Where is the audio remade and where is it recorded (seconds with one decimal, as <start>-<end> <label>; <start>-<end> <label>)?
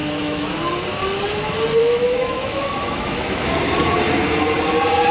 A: 0.0-0.6 remade; 0.6-1.8 recorded; 1.8-3.5 remade; 3.5-5.1 recorded